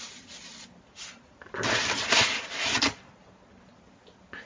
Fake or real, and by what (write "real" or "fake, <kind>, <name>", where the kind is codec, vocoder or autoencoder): real